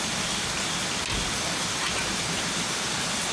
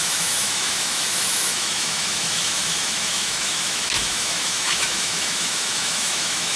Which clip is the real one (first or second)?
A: first